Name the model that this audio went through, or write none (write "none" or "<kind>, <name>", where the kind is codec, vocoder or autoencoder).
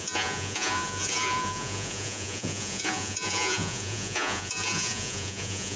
vocoder, Vocos